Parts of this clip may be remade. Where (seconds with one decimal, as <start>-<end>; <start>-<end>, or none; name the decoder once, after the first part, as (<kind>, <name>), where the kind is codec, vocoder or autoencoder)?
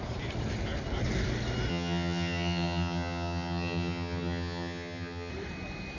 1.7-5.3 (vocoder, HiFi-GAN)